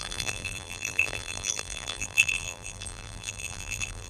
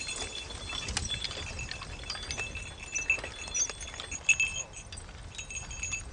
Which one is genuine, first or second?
second